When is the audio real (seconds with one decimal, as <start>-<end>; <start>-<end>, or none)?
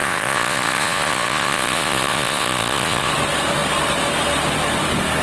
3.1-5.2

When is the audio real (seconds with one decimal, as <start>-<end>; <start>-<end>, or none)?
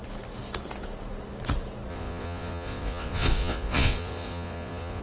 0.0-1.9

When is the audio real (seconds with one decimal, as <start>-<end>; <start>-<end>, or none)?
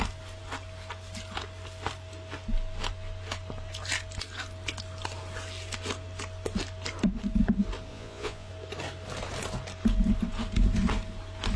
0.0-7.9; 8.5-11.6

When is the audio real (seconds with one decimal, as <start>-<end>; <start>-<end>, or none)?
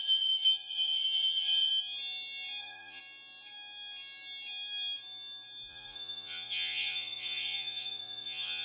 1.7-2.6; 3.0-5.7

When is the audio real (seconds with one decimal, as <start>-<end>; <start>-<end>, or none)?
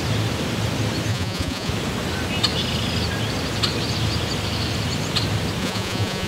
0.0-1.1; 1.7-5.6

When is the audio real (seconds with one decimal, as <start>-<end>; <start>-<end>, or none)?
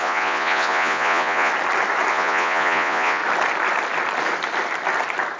1.5-2.1; 3.2-5.4